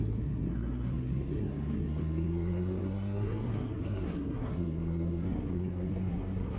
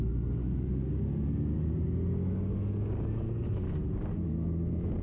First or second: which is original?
second